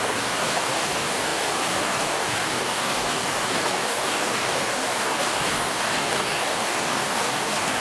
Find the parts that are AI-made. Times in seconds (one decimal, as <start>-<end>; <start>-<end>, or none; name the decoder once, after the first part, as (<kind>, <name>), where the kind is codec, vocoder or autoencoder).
0.0-7.8 (codec, DAC)